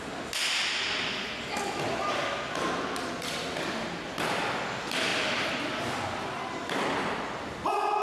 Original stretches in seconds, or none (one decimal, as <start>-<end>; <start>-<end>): 0.0-8.0